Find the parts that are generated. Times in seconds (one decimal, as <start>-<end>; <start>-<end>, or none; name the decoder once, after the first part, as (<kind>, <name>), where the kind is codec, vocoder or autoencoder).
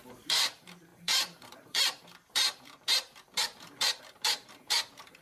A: 0.0-5.2 (vocoder, BigVGAN v2)